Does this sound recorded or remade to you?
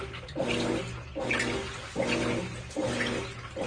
recorded